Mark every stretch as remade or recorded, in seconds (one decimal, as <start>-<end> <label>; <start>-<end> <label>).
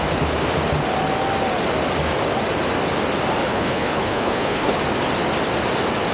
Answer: 0.0-3.4 recorded; 3.4-4.8 remade; 4.8-6.1 recorded